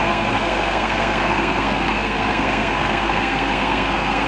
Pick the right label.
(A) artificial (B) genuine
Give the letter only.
A